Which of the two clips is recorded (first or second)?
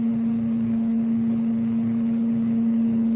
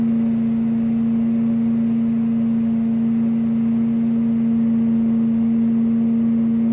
second